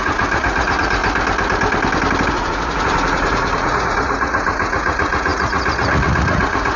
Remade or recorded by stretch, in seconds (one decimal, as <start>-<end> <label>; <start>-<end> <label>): 0.0-1.0 remade; 1.0-2.3 recorded; 2.3-6.8 remade